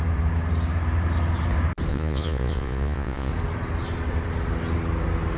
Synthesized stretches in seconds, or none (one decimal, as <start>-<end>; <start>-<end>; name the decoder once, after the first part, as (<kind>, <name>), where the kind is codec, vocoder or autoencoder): 1.9-3.3 (vocoder, Vocos)